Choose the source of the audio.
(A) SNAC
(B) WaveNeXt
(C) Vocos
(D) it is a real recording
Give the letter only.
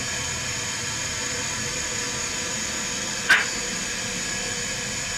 D